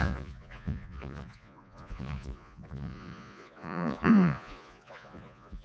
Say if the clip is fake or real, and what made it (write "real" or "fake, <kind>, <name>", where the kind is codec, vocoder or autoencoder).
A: fake, vocoder, Vocos